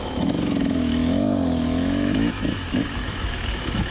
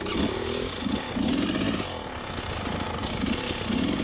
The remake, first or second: first